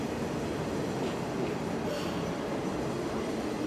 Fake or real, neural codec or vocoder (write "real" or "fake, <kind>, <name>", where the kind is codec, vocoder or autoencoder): fake, vocoder, BigVGAN v2